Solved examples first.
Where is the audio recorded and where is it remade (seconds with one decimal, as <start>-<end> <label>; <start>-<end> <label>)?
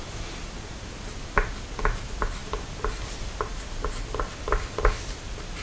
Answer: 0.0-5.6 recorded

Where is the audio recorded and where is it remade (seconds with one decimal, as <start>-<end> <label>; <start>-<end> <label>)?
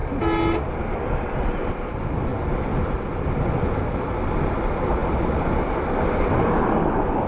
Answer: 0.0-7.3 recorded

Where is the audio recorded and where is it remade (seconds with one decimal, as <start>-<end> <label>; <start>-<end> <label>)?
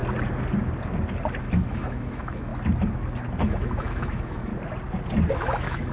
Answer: 0.0-1.4 recorded; 1.4-2.5 remade; 2.5-3.4 recorded; 3.4-4.5 remade; 4.5-5.3 recorded; 5.3-5.9 remade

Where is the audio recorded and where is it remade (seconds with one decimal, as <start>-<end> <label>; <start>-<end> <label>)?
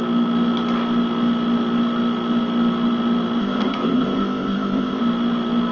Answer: 0.0-3.4 recorded; 3.4-5.0 remade; 5.0-5.7 recorded